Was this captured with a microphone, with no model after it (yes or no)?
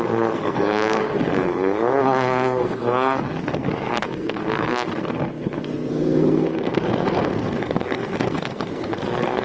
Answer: no